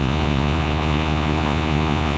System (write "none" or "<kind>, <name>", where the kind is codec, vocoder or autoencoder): vocoder, Vocos